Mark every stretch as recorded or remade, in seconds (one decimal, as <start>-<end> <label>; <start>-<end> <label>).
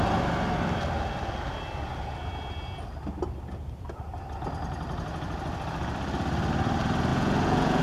0.0-7.1 recorded; 7.1-7.8 remade